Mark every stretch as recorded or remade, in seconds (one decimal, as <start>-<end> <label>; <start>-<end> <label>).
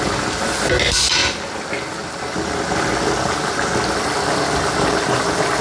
0.0-5.6 recorded